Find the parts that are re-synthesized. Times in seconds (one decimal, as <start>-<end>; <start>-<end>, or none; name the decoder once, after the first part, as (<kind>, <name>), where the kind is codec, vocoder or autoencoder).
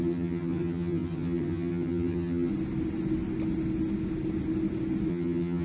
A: 0.0-2.5 (vocoder, HiFi-GAN); 5.1-5.6